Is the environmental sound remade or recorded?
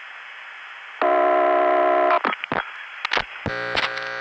recorded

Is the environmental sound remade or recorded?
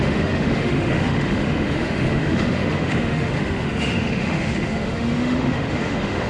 remade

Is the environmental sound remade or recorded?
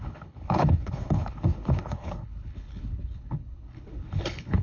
remade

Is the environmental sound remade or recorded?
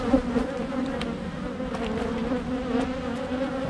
recorded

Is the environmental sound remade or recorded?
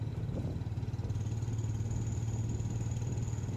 recorded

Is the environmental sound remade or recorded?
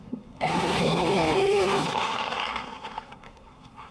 remade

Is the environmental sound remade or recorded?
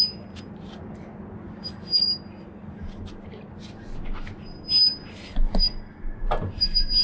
recorded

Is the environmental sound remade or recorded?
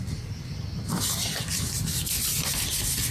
recorded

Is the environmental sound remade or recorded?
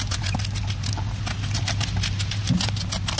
recorded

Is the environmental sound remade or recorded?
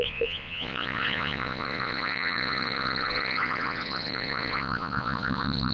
remade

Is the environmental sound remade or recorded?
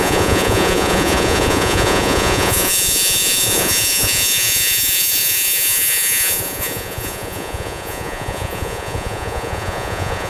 remade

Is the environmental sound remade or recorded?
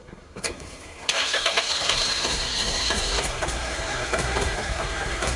remade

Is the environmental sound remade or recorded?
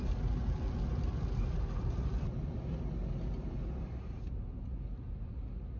recorded